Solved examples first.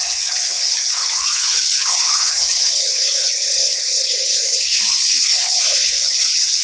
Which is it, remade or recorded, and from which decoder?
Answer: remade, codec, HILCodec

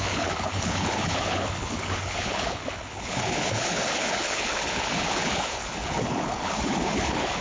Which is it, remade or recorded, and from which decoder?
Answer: remade, codec, HILCodec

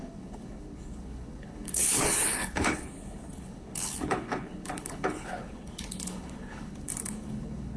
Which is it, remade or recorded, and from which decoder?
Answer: remade, codec, HILCodec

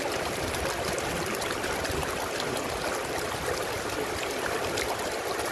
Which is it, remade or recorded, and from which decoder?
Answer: recorded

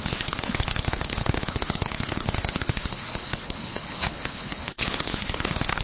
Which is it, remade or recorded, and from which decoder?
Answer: remade, codec, HILCodec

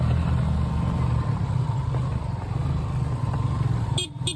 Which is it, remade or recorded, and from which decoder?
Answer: recorded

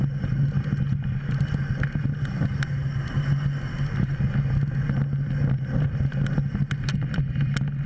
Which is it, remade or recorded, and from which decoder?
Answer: recorded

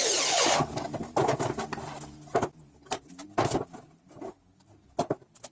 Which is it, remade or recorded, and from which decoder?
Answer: recorded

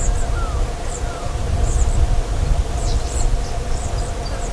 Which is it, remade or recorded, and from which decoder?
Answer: recorded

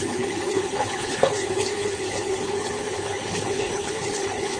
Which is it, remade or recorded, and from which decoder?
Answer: remade, codec, HILCodec